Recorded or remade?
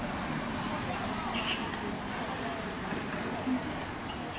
recorded